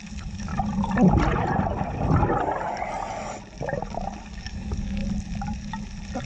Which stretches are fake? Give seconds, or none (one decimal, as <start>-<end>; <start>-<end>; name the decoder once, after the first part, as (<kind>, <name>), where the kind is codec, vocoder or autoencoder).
0.0-0.5 (codec, DAC); 4.2-5.0